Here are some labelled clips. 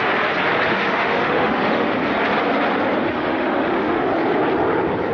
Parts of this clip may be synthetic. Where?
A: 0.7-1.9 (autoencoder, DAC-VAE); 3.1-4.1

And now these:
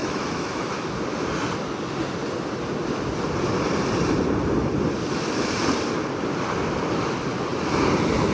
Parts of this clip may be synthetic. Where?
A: 0.0-0.7 (autoencoder, DAC-VAE)